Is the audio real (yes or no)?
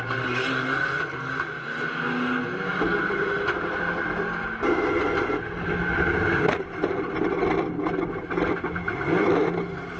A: yes